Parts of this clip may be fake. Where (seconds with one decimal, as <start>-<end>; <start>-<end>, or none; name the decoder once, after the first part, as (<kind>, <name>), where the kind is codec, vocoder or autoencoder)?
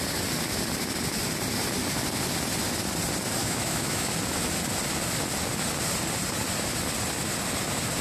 3.4-4.1 (autoencoder, DAC-VAE)